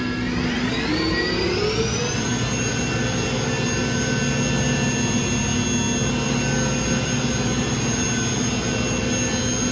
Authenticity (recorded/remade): recorded